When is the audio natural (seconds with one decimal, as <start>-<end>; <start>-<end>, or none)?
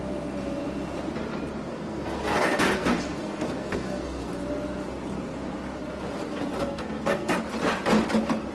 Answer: 0.0-1.7; 4.3-6.6; 7.3-8.5